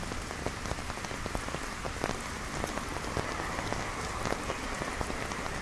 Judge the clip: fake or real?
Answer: real